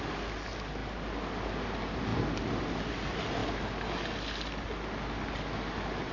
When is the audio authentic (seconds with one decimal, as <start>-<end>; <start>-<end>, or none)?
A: 0.0-6.1